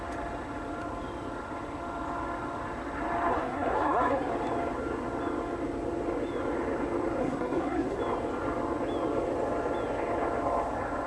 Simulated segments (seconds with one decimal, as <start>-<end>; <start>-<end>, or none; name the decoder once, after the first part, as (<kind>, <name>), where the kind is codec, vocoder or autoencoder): 3.3-4.3 (codec, SNAC); 7.2-8.0